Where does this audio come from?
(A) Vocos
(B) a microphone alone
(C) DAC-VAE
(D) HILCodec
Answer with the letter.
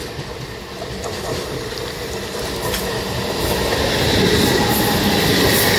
B